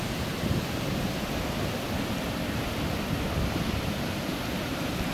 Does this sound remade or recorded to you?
remade